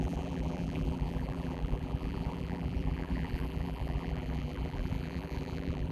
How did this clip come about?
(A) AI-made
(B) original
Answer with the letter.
A